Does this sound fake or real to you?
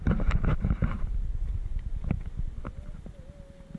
real